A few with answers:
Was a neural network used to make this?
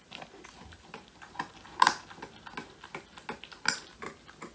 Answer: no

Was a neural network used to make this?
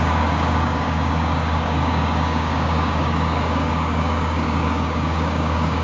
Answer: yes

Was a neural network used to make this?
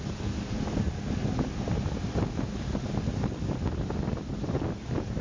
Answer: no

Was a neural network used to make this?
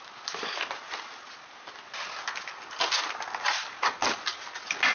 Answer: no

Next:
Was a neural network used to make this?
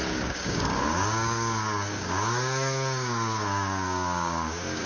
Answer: yes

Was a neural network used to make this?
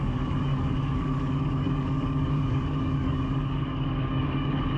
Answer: yes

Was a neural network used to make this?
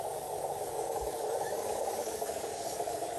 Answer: yes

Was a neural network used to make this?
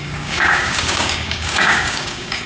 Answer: yes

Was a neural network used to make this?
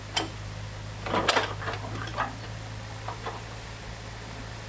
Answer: no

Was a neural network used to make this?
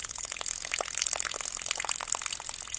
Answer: no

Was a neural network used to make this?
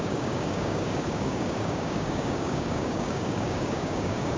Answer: yes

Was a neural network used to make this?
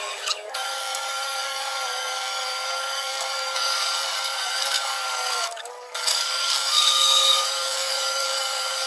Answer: yes